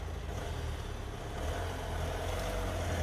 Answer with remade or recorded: recorded